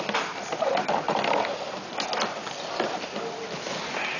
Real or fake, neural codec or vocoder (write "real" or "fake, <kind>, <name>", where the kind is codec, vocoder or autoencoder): real